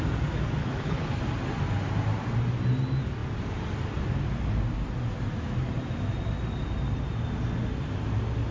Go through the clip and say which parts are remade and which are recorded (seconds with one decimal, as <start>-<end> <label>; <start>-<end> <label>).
0.0-0.6 recorded; 0.6-1.1 remade; 1.1-8.5 recorded